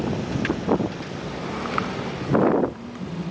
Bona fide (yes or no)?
yes